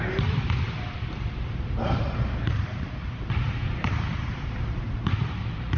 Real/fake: fake